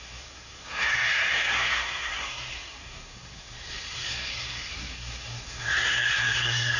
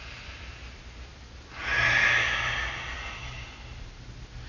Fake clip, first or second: first